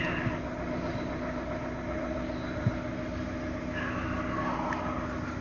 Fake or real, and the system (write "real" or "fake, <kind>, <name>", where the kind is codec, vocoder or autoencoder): real